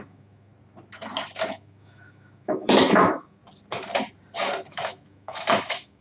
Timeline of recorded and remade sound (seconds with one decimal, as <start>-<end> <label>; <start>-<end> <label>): 0.0-0.5 remade; 0.5-1.5 recorded; 1.5-3.4 remade; 3.4-4.7 recorded; 4.7-6.0 remade

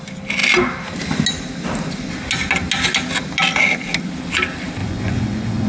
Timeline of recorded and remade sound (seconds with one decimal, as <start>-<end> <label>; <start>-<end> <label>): 0.0-4.8 recorded; 4.8-5.7 remade